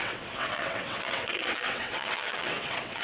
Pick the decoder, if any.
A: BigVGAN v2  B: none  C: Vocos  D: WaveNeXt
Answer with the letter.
D